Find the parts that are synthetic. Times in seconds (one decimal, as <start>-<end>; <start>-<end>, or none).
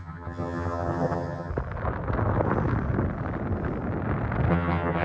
0.0-1.5; 4.5-5.0